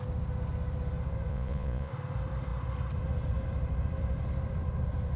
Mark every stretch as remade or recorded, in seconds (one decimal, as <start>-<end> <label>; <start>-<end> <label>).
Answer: 0.0-1.3 recorded; 1.3-1.9 remade; 1.9-5.2 recorded